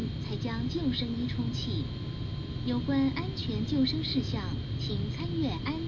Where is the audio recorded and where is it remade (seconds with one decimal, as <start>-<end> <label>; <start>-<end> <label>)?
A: 0.0-5.9 recorded